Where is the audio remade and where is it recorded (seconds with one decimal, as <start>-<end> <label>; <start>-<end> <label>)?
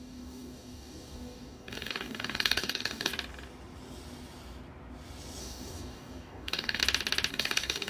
0.0-3.1 remade; 3.1-5.4 recorded; 5.4-6.8 remade; 6.8-7.3 recorded; 7.3-7.9 remade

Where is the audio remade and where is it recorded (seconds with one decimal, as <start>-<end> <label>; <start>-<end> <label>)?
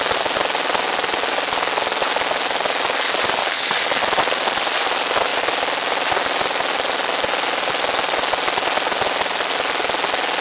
0.0-3.4 recorded; 3.4-4.0 remade; 4.0-10.4 recorded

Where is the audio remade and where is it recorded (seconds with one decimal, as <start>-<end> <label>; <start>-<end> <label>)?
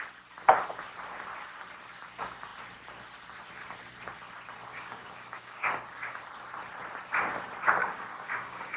0.0-4.7 recorded; 4.7-6.2 remade; 6.2-7.8 recorded; 7.8-8.8 remade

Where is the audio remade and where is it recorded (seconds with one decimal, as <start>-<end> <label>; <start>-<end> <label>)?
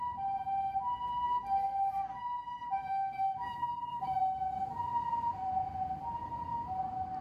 0.0-2.8 recorded; 2.8-4.2 remade; 4.2-7.2 recorded